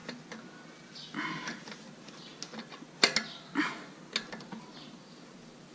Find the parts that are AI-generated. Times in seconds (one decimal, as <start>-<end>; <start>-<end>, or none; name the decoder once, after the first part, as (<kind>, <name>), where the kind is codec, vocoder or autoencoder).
none